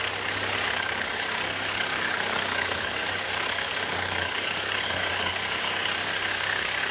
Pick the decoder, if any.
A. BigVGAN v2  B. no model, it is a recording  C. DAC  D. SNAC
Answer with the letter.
C